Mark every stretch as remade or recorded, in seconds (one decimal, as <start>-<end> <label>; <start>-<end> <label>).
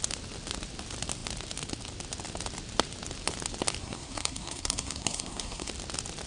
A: 0.0-3.8 recorded; 3.8-5.7 remade; 5.7-6.3 recorded